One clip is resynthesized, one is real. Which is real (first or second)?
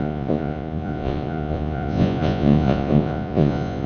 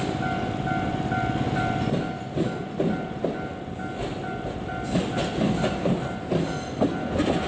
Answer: second